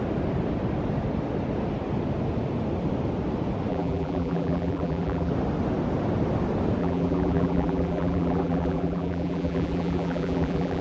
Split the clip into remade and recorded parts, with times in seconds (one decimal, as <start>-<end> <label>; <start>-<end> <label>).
0.0-3.7 recorded; 3.7-5.3 remade; 5.3-6.8 recorded; 6.8-10.8 remade